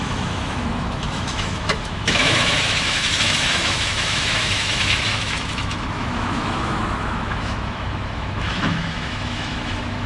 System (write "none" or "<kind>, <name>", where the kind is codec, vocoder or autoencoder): autoencoder, DAC-VAE